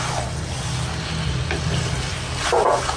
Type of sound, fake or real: real